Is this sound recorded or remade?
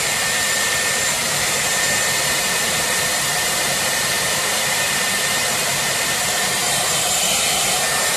remade